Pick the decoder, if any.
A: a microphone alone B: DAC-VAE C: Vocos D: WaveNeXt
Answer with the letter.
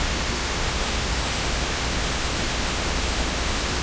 B